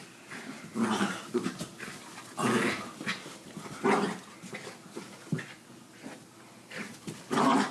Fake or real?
real